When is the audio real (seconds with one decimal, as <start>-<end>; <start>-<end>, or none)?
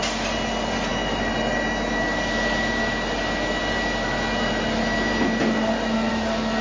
0.0-6.6